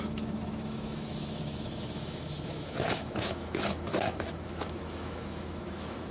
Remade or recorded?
remade